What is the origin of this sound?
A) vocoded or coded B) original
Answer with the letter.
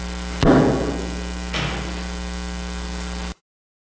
B